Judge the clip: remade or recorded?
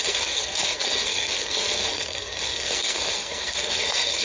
remade